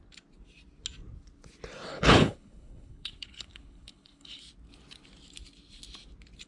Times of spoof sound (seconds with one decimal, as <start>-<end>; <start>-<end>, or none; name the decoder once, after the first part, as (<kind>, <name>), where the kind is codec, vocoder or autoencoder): 1.9-4.4 (codec, HILCodec)

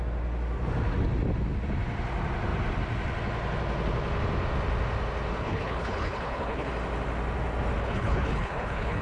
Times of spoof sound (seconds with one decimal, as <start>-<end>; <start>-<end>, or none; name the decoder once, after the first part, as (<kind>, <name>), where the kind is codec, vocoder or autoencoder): 5.3-6.7 (codec, HILCodec); 7.8-9.0

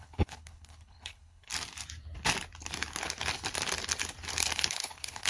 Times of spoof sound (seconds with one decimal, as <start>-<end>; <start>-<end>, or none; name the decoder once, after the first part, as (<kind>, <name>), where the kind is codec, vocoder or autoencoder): 0.0-1.5 (codec, HILCodec); 4.7-5.3

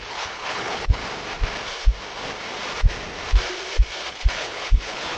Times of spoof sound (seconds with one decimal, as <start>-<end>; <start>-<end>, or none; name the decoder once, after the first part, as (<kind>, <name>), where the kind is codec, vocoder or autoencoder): 0.0-1.0 (codec, HILCodec); 4.1-5.2

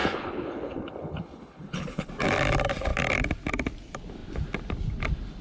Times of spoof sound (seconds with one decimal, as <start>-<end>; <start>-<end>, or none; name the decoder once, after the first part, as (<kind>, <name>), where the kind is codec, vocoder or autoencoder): 0.0-2.1 (codec, HILCodec)

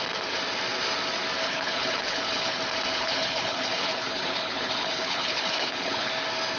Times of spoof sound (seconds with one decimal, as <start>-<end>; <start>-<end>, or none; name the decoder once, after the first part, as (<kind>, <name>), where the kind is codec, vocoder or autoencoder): 1.4-2.6 (codec, HILCodec); 3.0-6.1

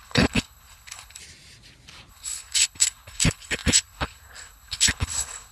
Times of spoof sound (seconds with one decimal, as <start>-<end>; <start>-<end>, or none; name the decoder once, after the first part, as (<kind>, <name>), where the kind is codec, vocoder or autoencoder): 0.0-1.2 (codec, HILCodec); 2.1-5.5

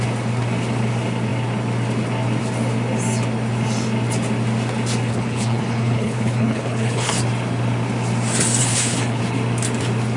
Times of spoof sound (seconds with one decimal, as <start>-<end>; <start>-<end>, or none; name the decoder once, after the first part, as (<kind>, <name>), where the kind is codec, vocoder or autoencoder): 5.1-7.2 (codec, HILCodec); 8.6-9.2